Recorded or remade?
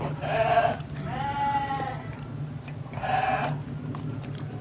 recorded